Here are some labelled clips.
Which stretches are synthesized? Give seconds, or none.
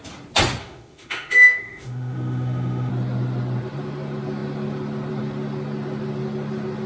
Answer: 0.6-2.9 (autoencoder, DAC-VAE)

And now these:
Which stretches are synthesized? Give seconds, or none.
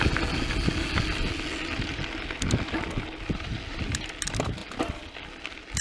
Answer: none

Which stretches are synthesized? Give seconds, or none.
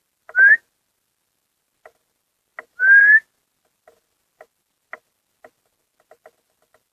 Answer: none